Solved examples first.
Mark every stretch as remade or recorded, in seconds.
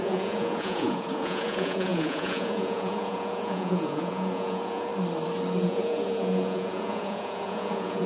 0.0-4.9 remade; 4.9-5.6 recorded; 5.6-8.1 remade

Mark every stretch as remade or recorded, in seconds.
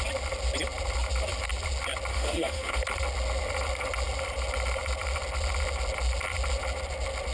0.0-2.1 recorded; 2.1-2.8 remade; 2.8-7.3 recorded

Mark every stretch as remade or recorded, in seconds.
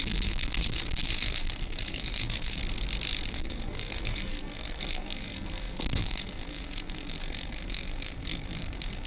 0.0-2.6 remade; 2.6-3.3 recorded; 3.3-9.1 remade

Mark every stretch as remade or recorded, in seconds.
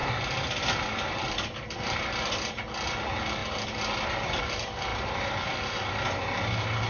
0.0-2.0 remade; 2.0-6.9 recorded